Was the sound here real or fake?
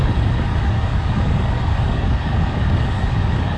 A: fake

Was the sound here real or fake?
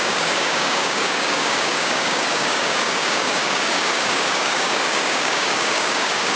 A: fake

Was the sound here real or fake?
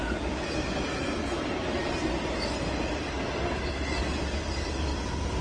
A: real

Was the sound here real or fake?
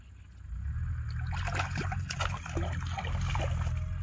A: real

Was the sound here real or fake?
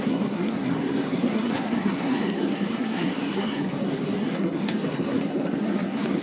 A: fake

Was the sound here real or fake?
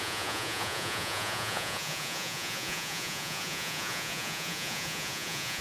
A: fake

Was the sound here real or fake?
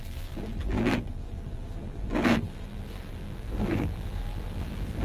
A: fake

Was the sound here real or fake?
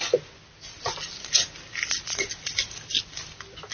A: real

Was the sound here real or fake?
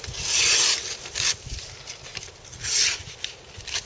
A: real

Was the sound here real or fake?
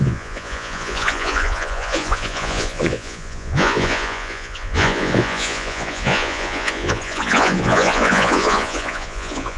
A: fake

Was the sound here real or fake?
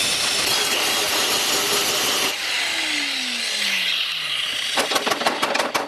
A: real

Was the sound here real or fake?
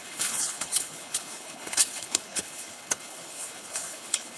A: fake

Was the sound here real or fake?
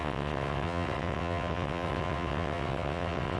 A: fake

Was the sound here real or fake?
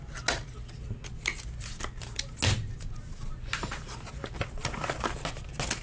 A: real